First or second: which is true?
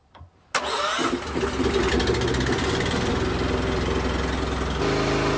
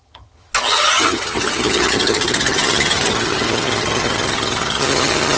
first